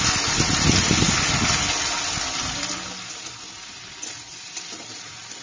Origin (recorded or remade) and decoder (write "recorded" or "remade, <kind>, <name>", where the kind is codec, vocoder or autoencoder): recorded